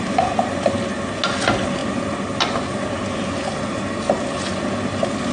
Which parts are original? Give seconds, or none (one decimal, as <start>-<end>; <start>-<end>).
0.0-5.3